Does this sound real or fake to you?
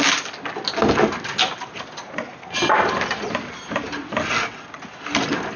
real